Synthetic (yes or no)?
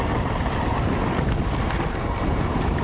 no